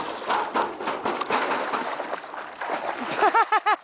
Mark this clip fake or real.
real